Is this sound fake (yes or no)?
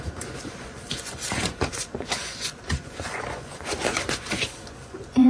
yes